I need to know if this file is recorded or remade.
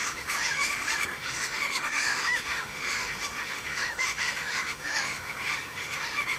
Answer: remade